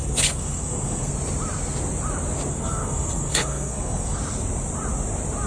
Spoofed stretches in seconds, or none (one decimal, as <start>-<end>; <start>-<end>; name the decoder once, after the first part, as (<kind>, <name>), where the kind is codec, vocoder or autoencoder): 0.0-1.1 (codec, SNAC); 2.5-4.2